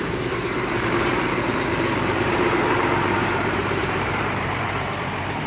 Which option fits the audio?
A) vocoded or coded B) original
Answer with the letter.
A